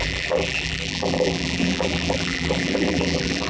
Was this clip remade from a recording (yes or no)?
yes